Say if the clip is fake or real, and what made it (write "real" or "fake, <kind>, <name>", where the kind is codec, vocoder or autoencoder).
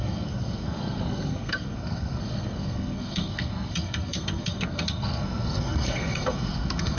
fake, codec, SNAC